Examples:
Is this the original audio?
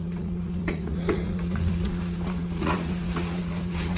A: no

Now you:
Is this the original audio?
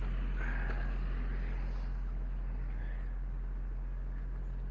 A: yes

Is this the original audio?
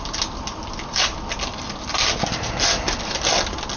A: yes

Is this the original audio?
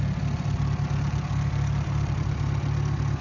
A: yes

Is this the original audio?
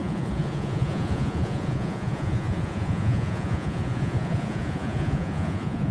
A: no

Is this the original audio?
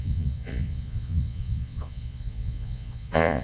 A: no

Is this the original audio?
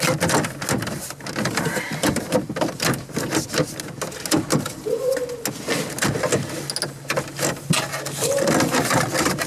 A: yes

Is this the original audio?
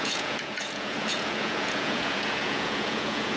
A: no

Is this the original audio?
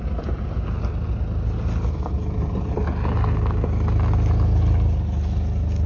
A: yes